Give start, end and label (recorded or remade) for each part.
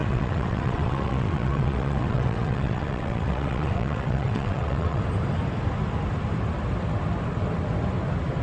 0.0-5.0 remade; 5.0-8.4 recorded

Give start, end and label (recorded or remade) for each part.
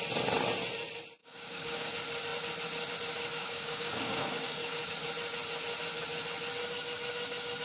0.0-1.2 recorded; 1.2-1.9 remade; 1.9-3.4 recorded; 3.4-4.9 remade; 4.9-7.6 recorded